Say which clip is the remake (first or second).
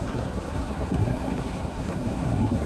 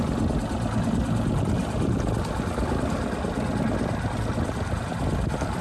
first